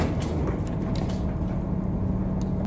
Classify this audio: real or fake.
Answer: real